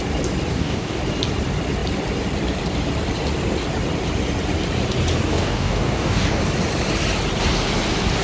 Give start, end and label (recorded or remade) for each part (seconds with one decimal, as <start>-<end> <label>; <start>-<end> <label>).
0.0-0.5 recorded; 0.5-1.0 remade; 1.0-5.3 recorded; 5.3-6.4 remade; 6.4-8.2 recorded